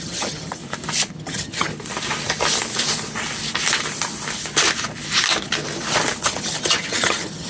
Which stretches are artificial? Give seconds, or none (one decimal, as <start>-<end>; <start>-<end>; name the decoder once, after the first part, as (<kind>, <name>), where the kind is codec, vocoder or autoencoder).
0.0-0.6 (vocoder, HiFi-GAN); 1.1-1.7; 6.2-7.5